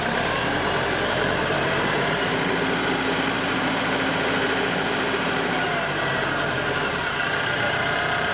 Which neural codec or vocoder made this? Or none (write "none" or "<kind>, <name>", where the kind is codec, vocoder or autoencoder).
vocoder, BigVGAN v2